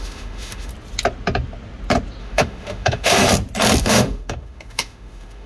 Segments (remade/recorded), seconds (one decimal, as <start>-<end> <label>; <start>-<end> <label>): 0.0-0.7 remade; 0.7-2.2 recorded; 2.2-3.2 remade; 3.2-3.8 recorded; 3.8-5.5 remade